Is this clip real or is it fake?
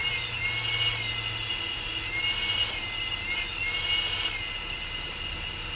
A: real